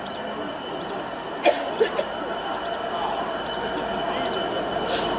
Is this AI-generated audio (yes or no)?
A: no